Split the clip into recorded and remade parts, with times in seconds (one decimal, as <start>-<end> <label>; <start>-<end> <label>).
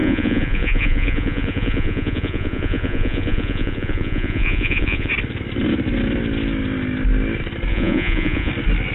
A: 0.0-5.1 remade; 5.1-7.7 recorded; 7.7-8.5 remade; 8.5-8.9 recorded